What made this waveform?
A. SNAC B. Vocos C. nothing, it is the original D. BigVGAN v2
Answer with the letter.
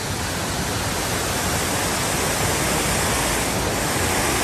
C